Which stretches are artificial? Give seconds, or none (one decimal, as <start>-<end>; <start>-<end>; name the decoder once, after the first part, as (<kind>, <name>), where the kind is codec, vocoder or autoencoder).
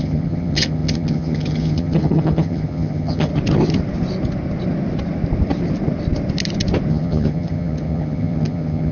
0.0-3.3 (vocoder, HiFi-GAN); 6.9-8.9